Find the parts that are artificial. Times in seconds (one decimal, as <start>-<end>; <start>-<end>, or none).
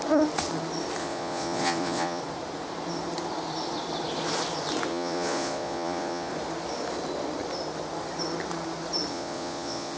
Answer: 1.0-2.2; 4.9-6.3; 9.1-10.0